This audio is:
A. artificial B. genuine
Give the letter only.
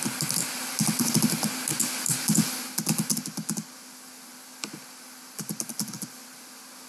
B